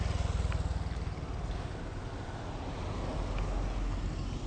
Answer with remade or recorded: recorded